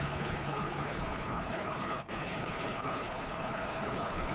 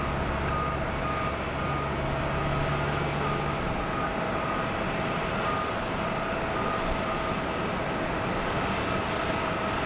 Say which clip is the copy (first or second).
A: first